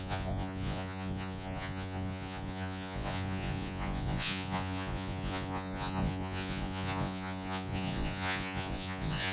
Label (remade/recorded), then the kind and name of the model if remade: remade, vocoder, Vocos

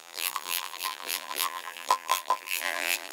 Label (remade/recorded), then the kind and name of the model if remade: remade, vocoder, BigVGAN v2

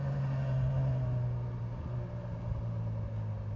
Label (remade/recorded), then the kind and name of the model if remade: recorded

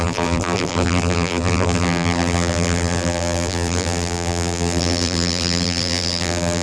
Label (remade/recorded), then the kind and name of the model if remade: remade, vocoder, BigVGAN v2